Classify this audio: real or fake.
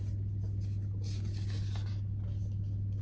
real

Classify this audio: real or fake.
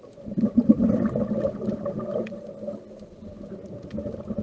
real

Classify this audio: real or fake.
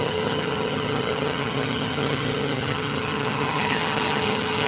fake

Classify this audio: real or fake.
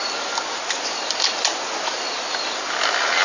real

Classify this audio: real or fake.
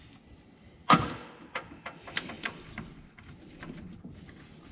real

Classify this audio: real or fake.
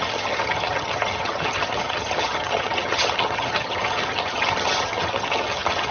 fake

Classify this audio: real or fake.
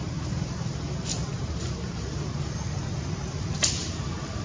real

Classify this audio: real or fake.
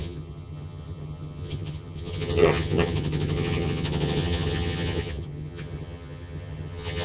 fake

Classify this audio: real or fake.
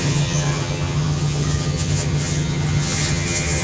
fake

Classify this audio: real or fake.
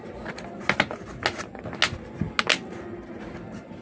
real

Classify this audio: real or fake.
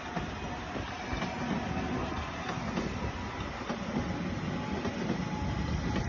real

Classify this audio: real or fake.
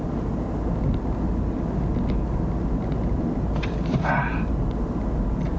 real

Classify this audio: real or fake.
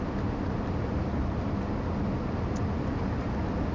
real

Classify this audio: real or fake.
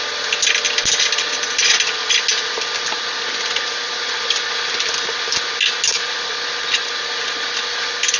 real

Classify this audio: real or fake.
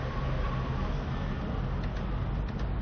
real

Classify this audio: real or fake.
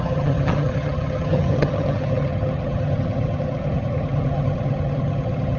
fake